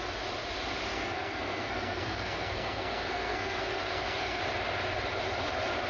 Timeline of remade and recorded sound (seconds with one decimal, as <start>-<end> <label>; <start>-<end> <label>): 0.0-0.9 recorded; 0.9-4.4 remade; 4.4-5.9 recorded